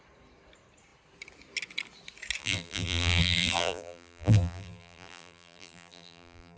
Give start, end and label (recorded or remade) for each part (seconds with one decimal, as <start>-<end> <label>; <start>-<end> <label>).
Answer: 0.0-2.4 recorded; 2.4-6.6 remade